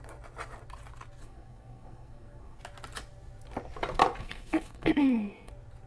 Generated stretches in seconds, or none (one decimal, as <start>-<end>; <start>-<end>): 1.2-2.6; 4.2-5.5